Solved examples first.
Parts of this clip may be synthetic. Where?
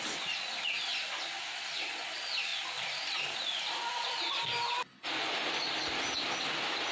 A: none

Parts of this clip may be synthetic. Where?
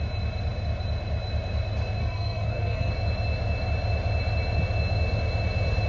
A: 2.0-2.9 (codec, SNAC)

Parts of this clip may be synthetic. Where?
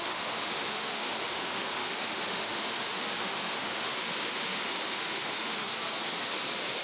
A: 0.0-5.7 (autoencoder, DAC-VAE)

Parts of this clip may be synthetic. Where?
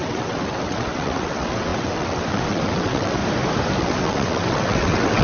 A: 0.0-3.2 (vocoder, WaveNeXt); 3.8-5.2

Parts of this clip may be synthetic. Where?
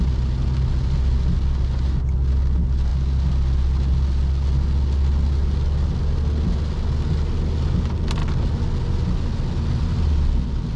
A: none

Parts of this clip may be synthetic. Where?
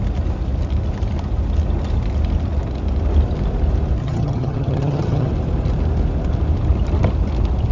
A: 4.0-5.3 (vocoder, HiFi-GAN)